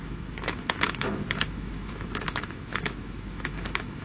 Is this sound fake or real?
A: fake